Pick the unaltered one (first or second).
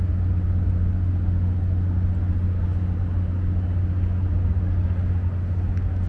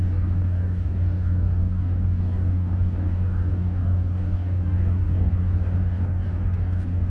first